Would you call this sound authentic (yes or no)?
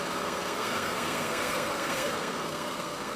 no